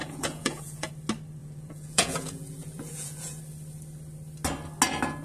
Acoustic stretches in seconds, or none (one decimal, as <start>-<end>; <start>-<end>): 0.9-1.4; 3.4-5.2